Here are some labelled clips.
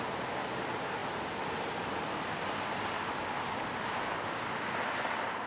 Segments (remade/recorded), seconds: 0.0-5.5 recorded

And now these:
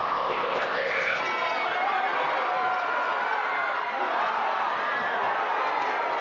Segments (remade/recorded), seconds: 0.0-1.2 remade; 1.2-6.2 recorded

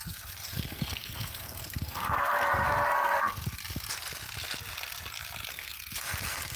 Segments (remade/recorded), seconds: 0.0-3.6 remade; 3.6-5.5 recorded; 5.5-6.6 remade

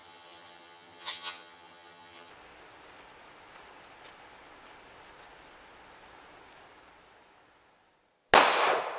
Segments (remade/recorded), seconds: 0.0-2.3 remade; 2.3-9.0 recorded

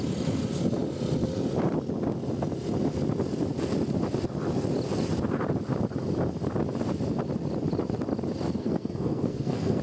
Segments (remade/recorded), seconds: 0.0-8.6 recorded; 8.6-9.8 remade

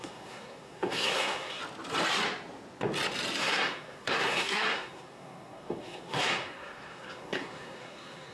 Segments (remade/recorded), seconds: 0.0-1.6 remade; 1.6-3.4 recorded; 3.4-8.3 remade

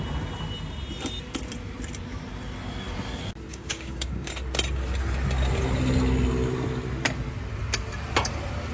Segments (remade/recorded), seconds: 0.0-3.5 recorded; 3.5-4.3 remade; 4.3-8.7 recorded